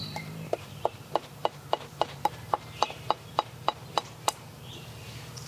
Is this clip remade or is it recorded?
remade